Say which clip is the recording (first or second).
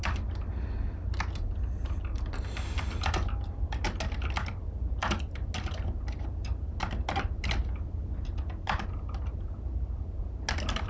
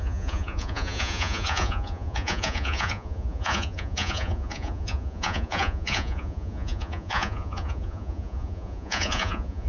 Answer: first